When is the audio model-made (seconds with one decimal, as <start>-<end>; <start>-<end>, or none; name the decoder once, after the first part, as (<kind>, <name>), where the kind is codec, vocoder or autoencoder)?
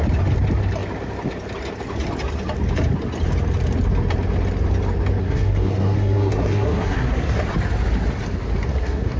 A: 5.2-7.4 (codec, SNAC); 8.7-9.2